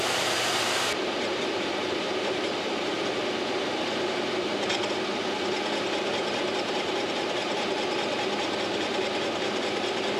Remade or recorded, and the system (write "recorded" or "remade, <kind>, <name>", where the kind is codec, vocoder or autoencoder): remade, vocoder, BigVGAN v2